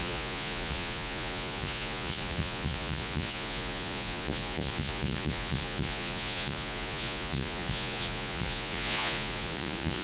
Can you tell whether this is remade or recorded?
remade